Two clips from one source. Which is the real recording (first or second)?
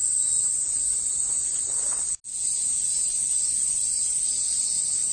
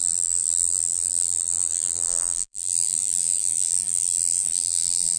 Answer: first